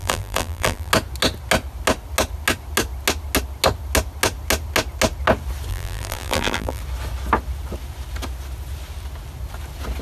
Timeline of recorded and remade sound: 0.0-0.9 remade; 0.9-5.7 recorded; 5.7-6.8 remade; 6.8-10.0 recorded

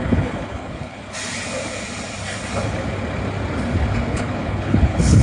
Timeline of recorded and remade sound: 0.0-1.0 remade; 1.0-4.1 recorded; 4.1-5.2 remade